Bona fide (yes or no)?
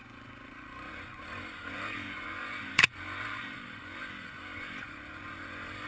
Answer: no